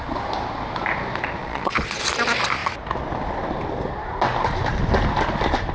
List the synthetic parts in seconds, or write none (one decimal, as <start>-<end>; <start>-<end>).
1.4-2.0